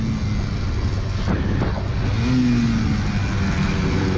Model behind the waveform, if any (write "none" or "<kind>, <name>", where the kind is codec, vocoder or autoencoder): none